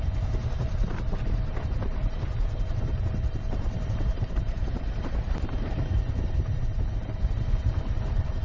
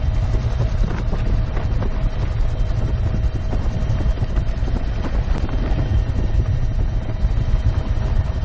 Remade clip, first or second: first